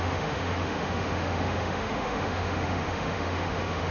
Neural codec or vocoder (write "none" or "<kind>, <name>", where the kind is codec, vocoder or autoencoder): autoencoder, DAC-VAE